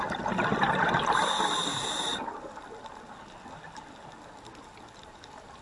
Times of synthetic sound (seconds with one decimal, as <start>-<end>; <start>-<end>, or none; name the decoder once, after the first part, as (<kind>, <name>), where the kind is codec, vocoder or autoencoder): none